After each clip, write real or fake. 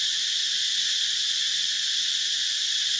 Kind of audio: real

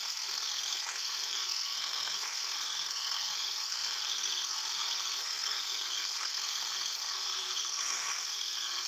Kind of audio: fake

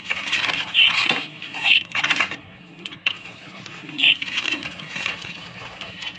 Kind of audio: fake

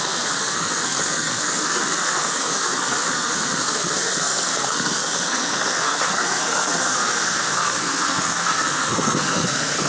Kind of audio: fake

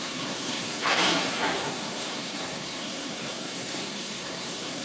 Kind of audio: fake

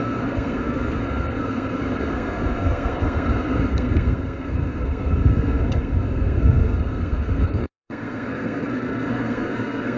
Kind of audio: fake